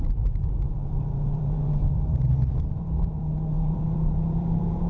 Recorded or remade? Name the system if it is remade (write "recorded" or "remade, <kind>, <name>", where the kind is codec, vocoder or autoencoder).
remade, vocoder, BigVGAN v2